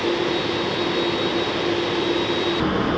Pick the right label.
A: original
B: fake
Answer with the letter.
A